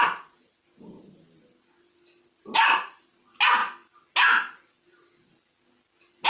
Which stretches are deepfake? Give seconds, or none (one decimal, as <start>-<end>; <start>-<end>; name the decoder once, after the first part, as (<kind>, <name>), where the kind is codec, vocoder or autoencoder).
none